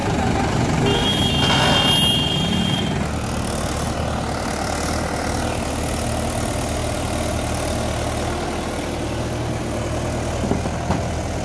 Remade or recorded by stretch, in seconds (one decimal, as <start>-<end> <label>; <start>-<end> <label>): 0.0-11.4 recorded